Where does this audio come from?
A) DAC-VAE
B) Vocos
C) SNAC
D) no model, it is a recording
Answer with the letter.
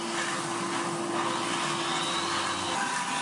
D